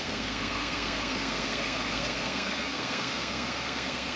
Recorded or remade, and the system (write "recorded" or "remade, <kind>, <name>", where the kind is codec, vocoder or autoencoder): remade, codec, SNAC